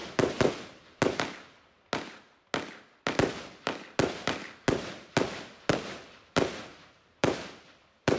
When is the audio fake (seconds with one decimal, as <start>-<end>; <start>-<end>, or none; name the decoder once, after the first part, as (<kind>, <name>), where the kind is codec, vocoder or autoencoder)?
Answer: 6.7-8.2 (vocoder, BigVGAN v2)